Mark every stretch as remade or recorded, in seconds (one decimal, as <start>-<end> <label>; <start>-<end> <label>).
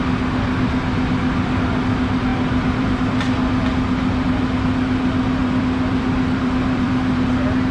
0.0-2.3 recorded; 2.3-2.9 remade; 2.9-5.4 recorded; 5.4-7.3 remade; 7.3-7.7 recorded